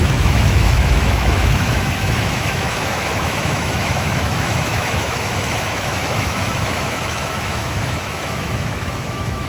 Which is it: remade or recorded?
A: remade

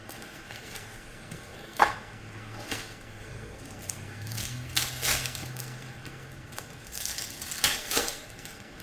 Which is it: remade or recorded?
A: remade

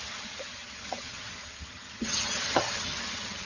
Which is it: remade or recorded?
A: remade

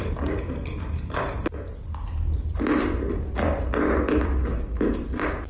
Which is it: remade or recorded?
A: recorded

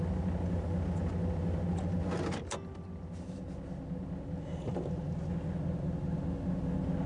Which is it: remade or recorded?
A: recorded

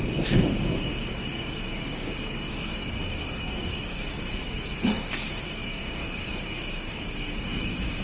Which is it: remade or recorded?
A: remade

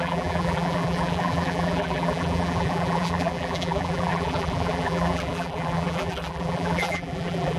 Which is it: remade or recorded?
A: remade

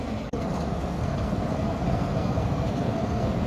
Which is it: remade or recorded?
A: remade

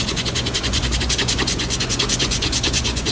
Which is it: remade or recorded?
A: remade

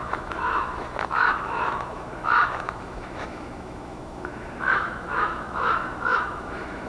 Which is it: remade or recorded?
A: remade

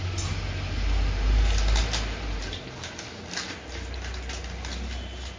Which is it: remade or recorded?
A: recorded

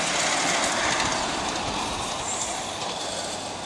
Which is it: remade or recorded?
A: recorded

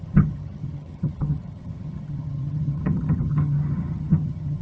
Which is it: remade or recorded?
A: remade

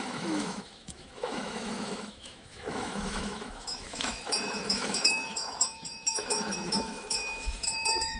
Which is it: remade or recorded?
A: remade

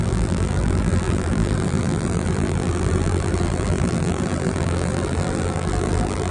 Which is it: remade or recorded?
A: remade